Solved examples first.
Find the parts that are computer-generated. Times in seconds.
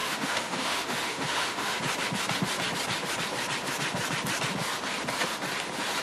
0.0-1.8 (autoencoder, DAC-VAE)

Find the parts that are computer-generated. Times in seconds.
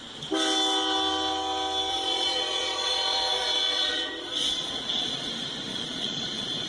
1.9-5.3 (vocoder, Vocos); 5.7-6.7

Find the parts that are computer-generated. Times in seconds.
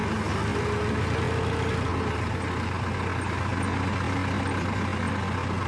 none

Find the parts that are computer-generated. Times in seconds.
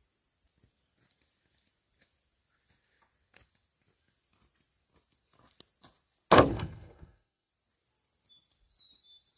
6.5-7.5 (codec, SNAC)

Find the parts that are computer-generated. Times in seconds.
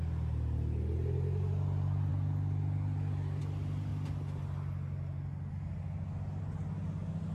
none